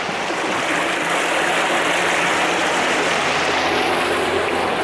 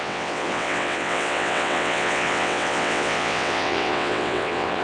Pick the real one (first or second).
first